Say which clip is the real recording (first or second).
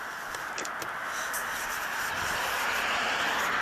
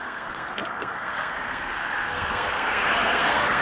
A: first